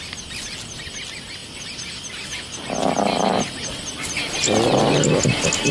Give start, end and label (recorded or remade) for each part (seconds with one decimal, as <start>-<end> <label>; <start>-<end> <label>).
0.0-5.7 recorded